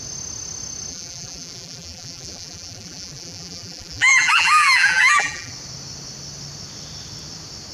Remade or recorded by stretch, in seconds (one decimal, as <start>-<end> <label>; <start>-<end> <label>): 0.0-0.9 recorded; 0.9-5.5 remade; 5.5-7.7 recorded